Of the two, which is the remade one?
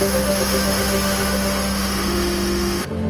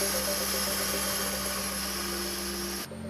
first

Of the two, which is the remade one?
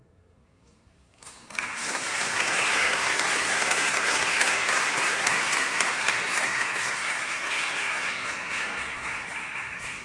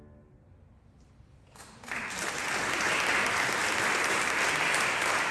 first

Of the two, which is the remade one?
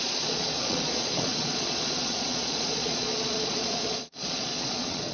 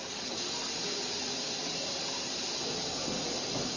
first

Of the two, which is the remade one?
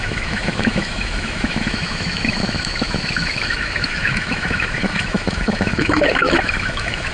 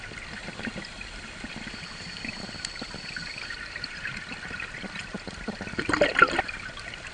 first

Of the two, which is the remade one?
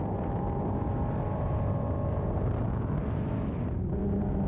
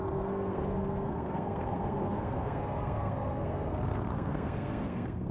second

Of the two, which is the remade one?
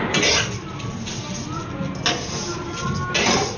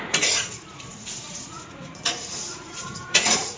second